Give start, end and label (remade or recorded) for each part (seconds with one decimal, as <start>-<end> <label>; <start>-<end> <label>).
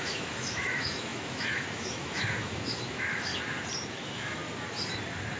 0.0-3.3 remade; 3.3-3.9 recorded; 3.9-4.4 remade; 4.4-5.4 recorded